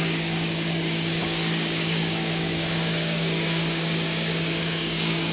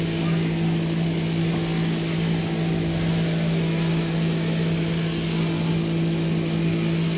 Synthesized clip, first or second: first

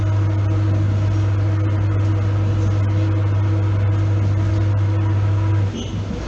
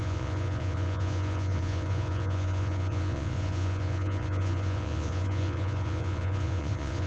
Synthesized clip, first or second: second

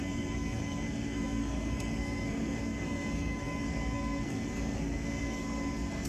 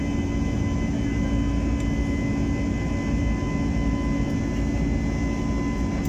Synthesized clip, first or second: first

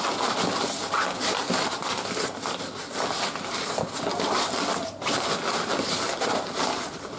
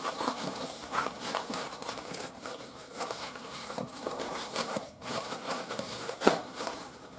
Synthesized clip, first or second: second